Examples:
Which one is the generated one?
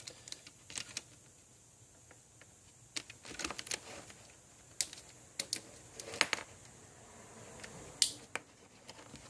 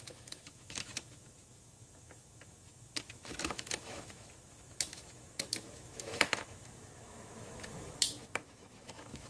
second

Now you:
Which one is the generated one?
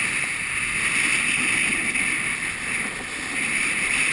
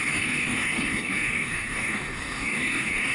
second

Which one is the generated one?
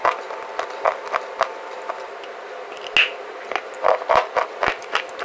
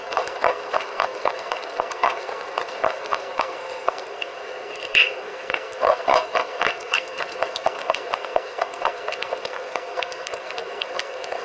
second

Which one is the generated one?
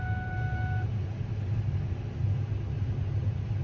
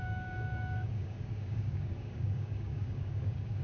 second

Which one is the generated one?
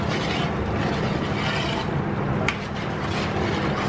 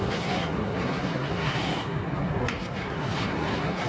second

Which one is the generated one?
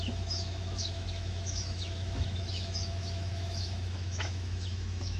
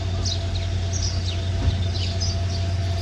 first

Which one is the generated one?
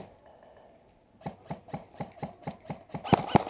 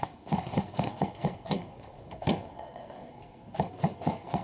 second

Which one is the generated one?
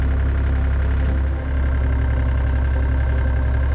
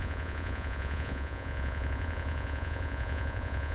second